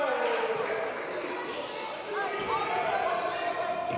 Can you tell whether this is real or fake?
real